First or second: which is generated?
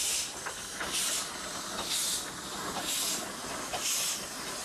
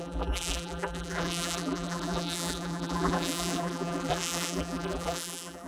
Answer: second